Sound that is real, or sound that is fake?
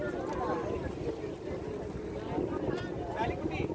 real